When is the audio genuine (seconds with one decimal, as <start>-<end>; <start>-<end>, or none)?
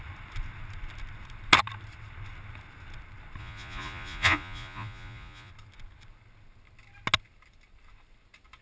0.0-3.4; 5.5-8.6